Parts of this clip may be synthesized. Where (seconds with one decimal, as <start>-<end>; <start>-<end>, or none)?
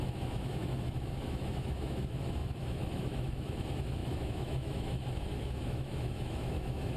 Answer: 0.0-7.0